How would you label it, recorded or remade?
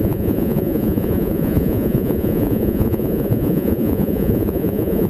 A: remade